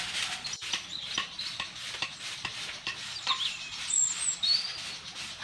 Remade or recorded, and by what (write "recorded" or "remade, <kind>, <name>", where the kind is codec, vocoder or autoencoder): recorded